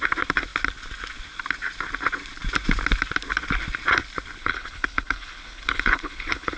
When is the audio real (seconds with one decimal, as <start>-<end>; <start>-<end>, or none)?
0.0-4.4